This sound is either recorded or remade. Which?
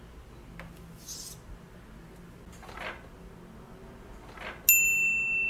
recorded